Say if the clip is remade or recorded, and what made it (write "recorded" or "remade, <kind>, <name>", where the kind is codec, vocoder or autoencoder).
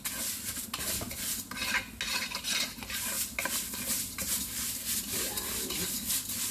recorded